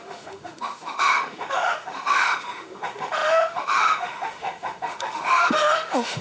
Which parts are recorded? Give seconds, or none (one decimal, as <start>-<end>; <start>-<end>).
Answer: none